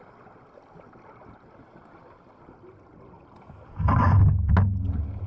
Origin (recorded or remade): recorded